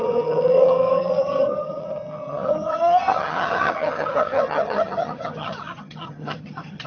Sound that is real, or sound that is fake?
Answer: fake